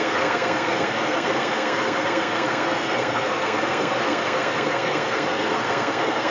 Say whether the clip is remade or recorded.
remade